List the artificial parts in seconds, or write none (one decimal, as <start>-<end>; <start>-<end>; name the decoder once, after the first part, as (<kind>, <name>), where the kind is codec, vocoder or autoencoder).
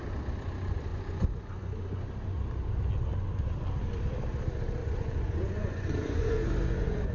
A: 0.9-2.0 (vocoder, Vocos); 4.8-7.1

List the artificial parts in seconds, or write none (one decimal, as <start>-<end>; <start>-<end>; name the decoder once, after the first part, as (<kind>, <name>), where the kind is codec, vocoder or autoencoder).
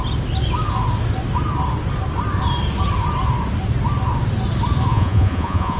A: 4.9-5.8 (vocoder, Vocos)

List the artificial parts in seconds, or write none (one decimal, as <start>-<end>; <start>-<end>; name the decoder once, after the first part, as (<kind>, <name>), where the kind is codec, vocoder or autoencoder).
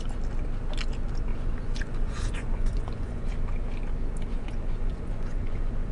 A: 1.3-3.3 (vocoder, Vocos); 4.3-5.9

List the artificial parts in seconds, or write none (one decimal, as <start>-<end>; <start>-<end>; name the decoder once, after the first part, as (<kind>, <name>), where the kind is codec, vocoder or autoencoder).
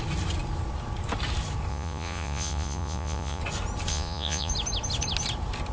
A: 1.7-3.4 (vocoder, Vocos); 3.9-4.5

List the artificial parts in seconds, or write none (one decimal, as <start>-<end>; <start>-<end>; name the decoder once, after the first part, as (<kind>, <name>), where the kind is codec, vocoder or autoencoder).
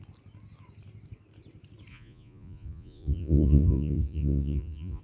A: 1.9-5.0 (vocoder, Vocos)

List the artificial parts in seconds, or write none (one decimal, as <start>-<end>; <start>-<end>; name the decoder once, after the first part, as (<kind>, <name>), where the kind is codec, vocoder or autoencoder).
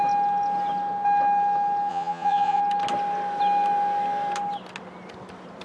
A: 1.9-2.6 (vocoder, Vocos)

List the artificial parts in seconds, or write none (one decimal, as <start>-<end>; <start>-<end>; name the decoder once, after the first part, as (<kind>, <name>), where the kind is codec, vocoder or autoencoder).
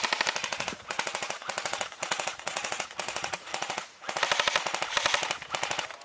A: 0.5-4.1 (vocoder, Vocos)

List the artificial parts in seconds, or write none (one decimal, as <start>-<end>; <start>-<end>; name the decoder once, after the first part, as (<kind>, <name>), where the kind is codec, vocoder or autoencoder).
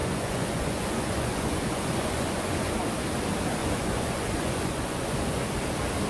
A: 0.0-2.7 (vocoder, Vocos); 3.6-5.5